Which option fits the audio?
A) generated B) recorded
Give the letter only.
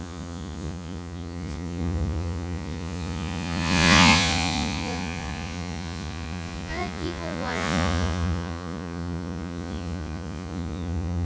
A